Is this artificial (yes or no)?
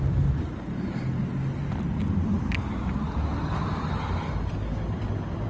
no